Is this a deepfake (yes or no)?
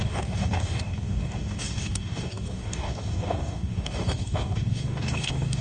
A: yes